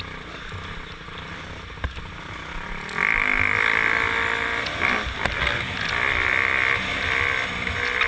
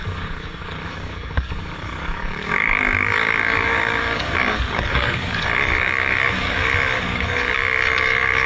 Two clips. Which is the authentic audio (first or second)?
first